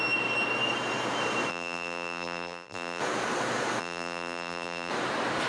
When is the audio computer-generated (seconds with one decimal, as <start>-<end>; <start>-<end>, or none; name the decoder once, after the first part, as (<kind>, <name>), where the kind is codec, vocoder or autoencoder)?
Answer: 1.5-3.0 (vocoder, BigVGAN v2); 3.8-4.9